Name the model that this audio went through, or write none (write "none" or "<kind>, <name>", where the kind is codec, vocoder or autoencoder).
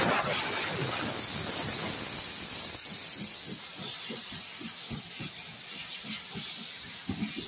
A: none